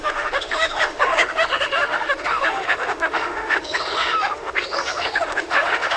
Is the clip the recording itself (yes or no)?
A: no